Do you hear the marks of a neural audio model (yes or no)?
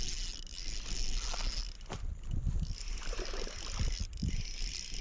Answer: no